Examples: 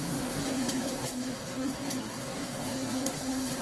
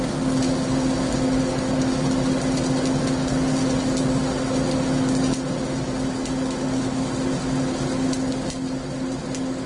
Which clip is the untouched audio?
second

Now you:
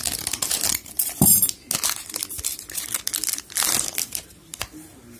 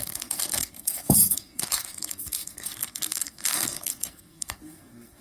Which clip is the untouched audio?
first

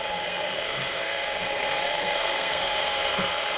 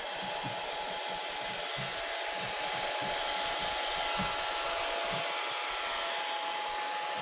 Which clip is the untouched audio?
second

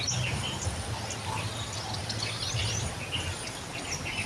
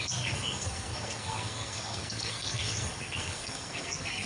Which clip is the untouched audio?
first